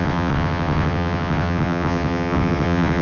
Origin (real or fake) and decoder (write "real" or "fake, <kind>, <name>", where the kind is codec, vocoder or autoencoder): fake, vocoder, WaveNeXt